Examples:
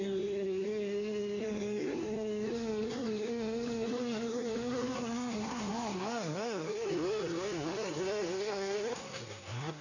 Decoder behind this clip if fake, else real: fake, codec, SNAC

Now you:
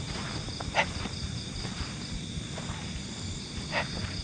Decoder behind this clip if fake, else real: real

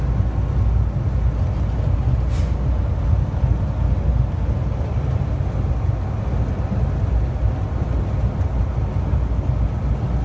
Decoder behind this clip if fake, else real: real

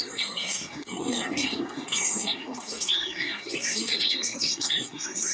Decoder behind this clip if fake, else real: fake, codec, SNAC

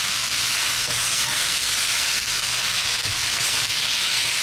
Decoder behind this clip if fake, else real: fake, codec, SNAC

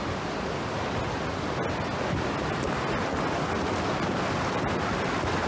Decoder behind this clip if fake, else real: real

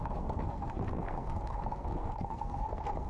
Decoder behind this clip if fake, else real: fake, codec, SNAC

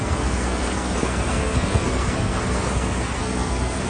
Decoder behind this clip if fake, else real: fake, codec, SNAC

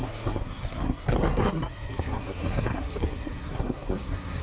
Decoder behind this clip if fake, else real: fake, codec, SNAC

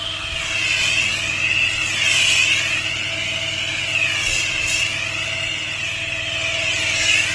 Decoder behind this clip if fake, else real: real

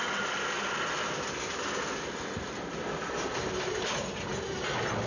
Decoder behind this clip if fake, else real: real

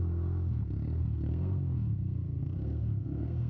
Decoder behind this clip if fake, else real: fake, codec, SNAC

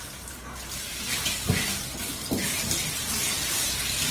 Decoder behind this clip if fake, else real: real